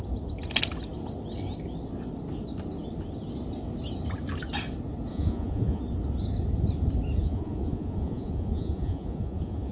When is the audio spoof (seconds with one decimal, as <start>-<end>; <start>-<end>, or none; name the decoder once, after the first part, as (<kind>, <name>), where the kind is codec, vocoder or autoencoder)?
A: 5.1-5.8 (vocoder, Vocos); 7.2-9.7